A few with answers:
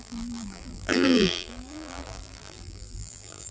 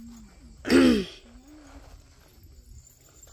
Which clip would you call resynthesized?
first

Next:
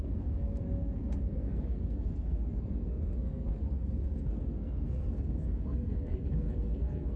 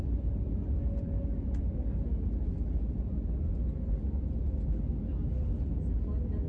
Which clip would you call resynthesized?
first